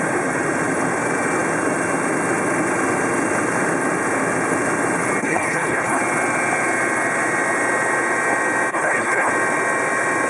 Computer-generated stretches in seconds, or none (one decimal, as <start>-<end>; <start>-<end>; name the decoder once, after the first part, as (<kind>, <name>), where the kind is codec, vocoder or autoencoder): 5.2-6.0 (codec, HILCodec); 8.7-9.3